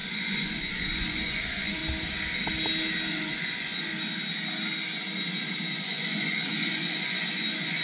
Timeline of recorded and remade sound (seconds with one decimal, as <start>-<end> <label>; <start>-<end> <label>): 0.0-1.8 remade; 1.8-3.1 recorded; 3.1-3.9 remade; 3.9-5.8 recorded; 5.8-7.8 remade